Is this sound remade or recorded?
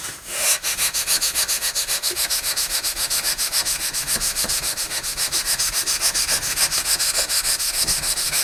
remade